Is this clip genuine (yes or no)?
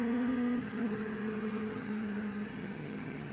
no